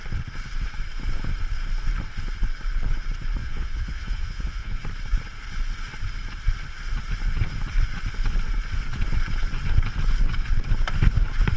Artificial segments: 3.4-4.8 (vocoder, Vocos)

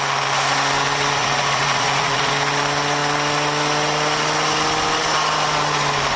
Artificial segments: 1.2-2.3 (vocoder, Vocos)

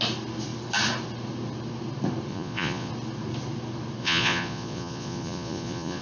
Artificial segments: 2.3-2.9 (vocoder, Vocos); 4.0-6.0

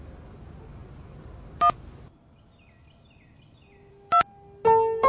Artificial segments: none

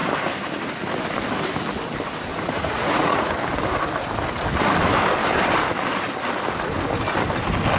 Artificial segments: 2.3-3.3 (vocoder, Vocos)

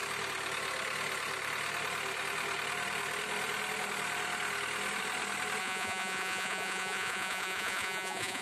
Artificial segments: 5.6-8.4 (vocoder, Vocos)

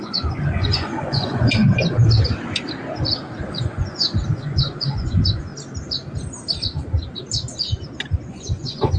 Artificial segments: 0.0-1.6 (vocoder, Vocos); 3.5-5.5; 8.3-9.0